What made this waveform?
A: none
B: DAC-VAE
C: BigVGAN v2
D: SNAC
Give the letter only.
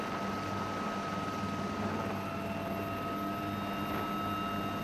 A